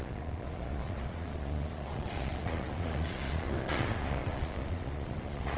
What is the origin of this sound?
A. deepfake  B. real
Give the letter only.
A